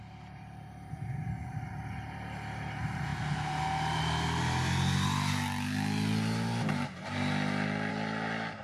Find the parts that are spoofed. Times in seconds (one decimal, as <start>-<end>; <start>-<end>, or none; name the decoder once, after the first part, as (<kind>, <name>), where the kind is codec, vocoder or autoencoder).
none